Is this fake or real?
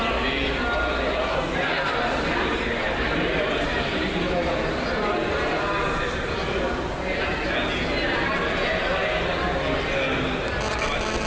real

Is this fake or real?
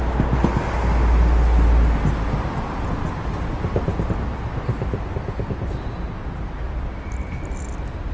real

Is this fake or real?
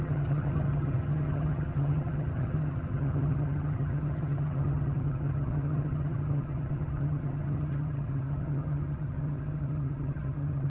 fake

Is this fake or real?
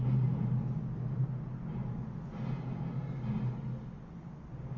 real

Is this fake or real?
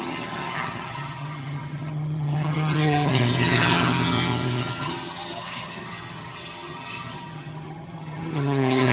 fake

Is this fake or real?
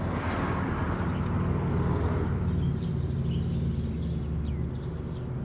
real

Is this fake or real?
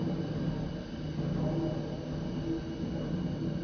real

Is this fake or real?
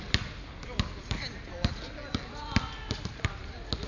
real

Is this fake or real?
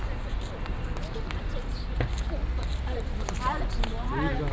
real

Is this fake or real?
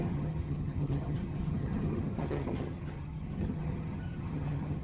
fake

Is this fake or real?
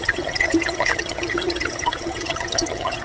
fake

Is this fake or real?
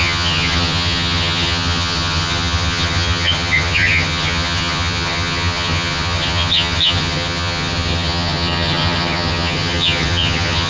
fake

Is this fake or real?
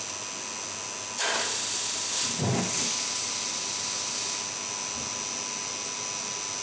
real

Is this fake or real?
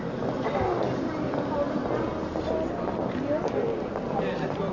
real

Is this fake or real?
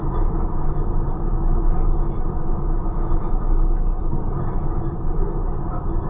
real